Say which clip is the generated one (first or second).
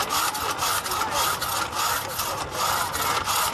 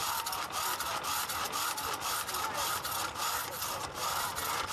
second